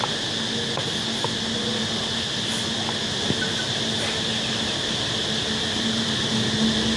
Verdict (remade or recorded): recorded